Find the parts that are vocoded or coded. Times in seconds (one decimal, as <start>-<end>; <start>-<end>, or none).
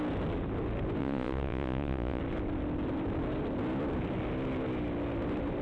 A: 1.0-2.2